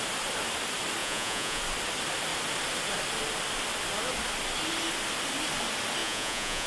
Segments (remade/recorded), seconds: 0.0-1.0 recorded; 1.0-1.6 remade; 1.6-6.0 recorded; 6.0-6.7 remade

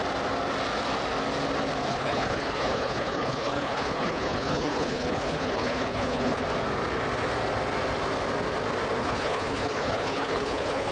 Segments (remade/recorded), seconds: 0.0-1.9 recorded; 1.9-6.4 remade; 6.4-9.0 recorded; 9.0-10.9 remade

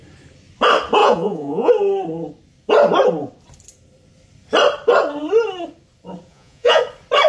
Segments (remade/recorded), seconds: 0.0-1.0 recorded; 1.0-1.7 remade; 1.7-6.3 recorded; 6.3-6.8 remade; 6.8-7.3 recorded